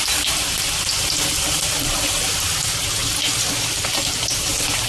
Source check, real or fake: real